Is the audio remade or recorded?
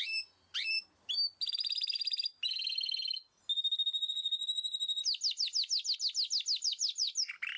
recorded